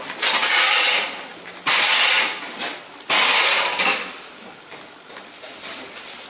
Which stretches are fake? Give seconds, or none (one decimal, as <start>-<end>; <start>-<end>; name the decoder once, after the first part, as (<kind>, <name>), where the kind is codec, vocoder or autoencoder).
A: none

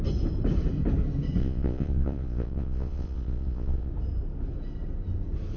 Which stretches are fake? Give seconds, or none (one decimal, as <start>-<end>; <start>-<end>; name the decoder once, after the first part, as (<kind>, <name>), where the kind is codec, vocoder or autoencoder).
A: 1.4-3.9 (vocoder, Vocos)

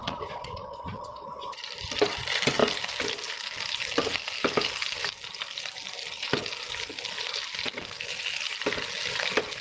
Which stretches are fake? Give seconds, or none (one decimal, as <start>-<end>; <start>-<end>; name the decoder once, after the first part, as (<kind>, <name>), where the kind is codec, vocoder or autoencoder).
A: 0.0-1.6 (vocoder, Vocos)

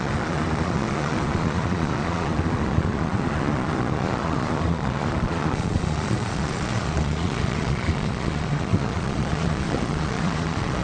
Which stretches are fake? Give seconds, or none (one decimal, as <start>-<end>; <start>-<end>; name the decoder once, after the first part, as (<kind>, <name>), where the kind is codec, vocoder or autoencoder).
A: 0.0-10.8 (vocoder, Vocos)

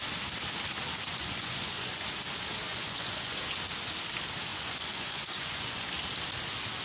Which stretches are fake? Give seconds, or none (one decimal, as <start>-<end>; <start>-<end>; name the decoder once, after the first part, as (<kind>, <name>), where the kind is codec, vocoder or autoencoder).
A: 1.1-1.9 (vocoder, Vocos); 2.7-3.4; 4.5-5.9

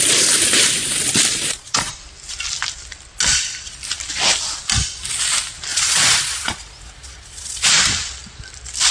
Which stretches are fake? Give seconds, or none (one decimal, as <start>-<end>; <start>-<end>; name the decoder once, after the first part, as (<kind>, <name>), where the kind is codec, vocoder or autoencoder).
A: 1.3-1.9 (vocoder, Vocos); 5.7-7.7